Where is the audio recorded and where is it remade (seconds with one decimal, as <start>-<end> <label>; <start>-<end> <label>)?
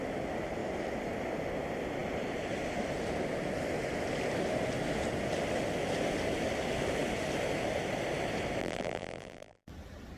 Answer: 0.0-8.6 recorded; 8.6-9.7 remade; 9.7-10.2 recorded